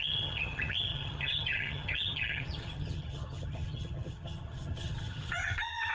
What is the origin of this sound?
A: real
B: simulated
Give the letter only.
B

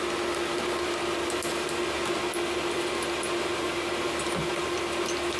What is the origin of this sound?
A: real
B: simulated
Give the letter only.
A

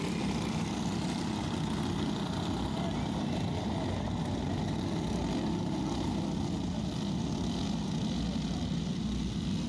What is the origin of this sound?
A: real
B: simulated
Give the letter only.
A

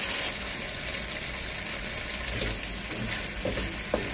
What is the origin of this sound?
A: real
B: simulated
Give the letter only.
A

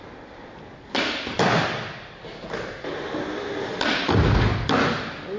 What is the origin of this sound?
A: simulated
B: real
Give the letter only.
B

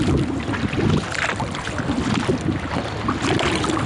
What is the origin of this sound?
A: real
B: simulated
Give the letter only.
A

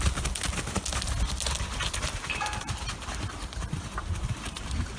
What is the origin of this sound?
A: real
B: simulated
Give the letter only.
A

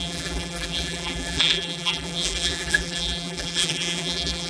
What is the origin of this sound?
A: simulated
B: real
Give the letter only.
A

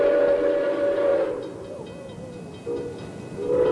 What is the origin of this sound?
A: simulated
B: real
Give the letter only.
B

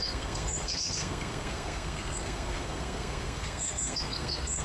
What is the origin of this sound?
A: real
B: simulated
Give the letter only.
B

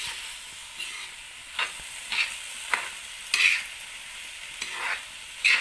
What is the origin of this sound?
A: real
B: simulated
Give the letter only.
A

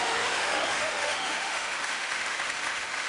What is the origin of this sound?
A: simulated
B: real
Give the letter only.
A